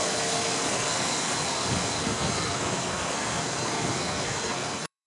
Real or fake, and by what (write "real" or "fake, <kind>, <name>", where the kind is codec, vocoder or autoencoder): fake, codec, SNAC